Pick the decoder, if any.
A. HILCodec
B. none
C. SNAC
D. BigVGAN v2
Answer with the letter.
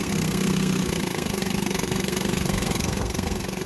C